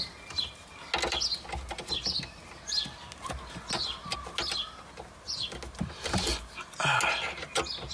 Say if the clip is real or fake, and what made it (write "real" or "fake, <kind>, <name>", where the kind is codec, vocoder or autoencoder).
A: real